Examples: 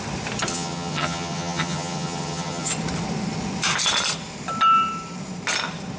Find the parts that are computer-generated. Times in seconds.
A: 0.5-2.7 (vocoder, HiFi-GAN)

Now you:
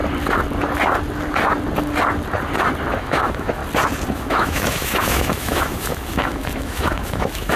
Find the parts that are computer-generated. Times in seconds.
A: 3.0-3.6 (autoencoder, DAC-VAE); 4.1-7.6

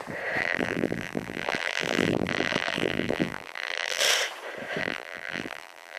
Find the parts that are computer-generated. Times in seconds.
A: 0.4-4.0 (vocoder, BigVGAN v2); 4.8-6.0